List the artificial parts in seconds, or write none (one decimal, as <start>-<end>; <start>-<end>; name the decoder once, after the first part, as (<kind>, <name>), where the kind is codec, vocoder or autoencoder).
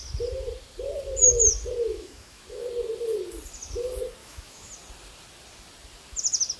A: 1.9-2.6 (autoencoder, DAC-VAE); 4.2-4.7